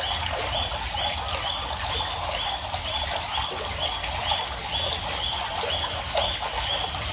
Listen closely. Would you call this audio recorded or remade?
recorded